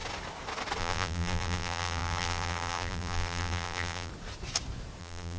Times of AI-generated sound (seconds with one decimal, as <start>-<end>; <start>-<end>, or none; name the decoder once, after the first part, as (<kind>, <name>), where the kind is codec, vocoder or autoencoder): 0.8-4.1 (vocoder, BigVGAN v2); 5.0-5.4